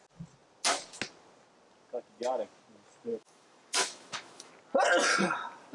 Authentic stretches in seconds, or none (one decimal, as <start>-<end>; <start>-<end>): 0.0-3.1; 4.5-5.7